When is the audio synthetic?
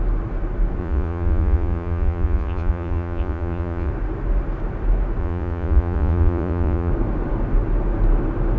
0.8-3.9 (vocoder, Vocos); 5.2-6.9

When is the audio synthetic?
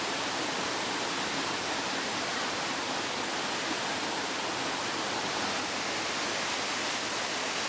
2.3-2.8 (vocoder, BigVGAN v2)